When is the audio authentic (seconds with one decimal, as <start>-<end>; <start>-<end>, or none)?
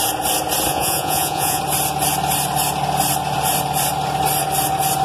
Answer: 0.0-0.7; 1.6-5.0